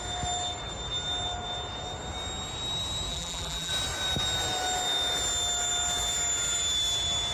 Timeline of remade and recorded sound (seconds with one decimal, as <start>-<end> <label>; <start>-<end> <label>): 0.0-3.1 recorded; 3.1-3.7 remade; 3.7-7.3 recorded